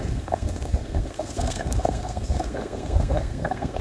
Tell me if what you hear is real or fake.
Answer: fake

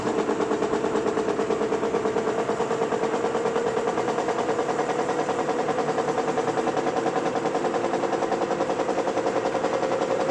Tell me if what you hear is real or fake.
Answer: fake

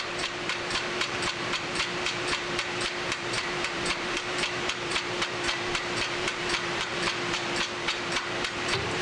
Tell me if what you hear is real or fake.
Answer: fake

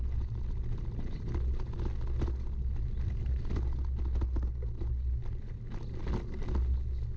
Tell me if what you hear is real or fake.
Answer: real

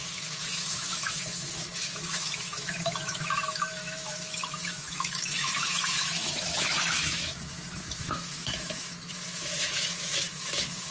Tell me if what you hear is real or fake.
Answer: fake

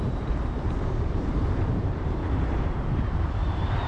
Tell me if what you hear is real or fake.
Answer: fake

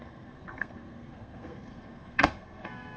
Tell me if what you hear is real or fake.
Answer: fake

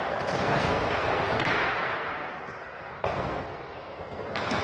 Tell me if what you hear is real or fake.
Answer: fake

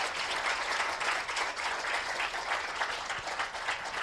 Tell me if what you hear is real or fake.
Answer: fake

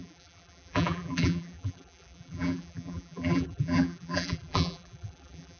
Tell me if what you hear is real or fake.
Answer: fake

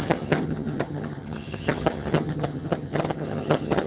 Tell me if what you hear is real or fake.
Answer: fake